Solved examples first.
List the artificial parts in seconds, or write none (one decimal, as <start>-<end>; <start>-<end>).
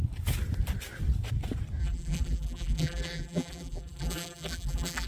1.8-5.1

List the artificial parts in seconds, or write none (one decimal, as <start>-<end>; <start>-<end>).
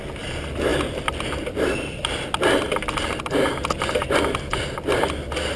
none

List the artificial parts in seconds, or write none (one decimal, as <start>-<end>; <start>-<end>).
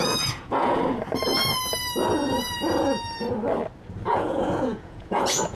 0.0-0.8; 4.1-5.5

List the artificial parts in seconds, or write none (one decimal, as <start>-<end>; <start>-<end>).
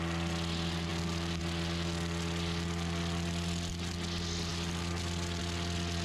none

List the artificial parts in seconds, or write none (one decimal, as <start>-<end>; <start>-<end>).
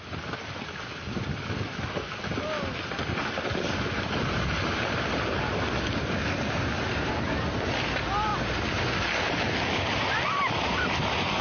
none